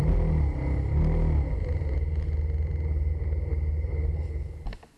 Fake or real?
real